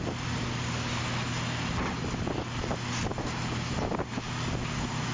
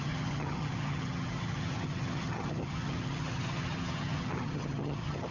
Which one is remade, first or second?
second